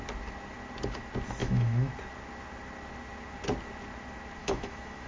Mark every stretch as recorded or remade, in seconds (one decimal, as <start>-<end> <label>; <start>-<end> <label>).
0.0-1.4 recorded; 1.4-1.9 remade; 1.9-4.4 recorded; 4.4-5.1 remade